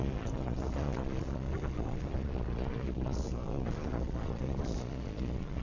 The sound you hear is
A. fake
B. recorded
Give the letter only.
A